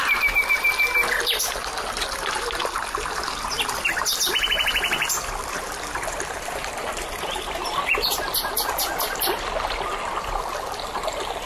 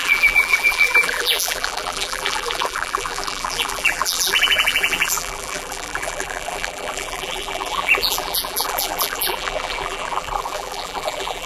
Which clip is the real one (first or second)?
first